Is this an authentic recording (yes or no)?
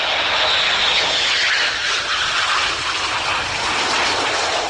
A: yes